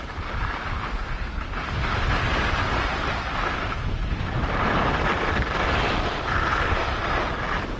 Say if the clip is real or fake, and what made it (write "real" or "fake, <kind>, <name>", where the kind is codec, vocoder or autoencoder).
real